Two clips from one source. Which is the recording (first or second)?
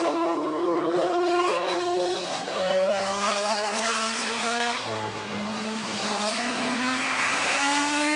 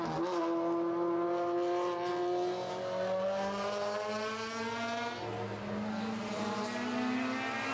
second